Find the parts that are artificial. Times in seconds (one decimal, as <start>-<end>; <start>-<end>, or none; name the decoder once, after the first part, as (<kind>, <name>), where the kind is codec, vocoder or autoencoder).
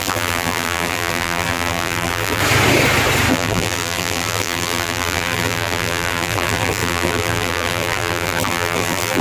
0.0-2.4 (vocoder, BigVGAN v2); 3.3-9.2